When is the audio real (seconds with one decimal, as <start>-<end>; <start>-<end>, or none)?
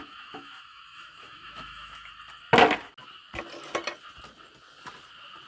2.1-5.5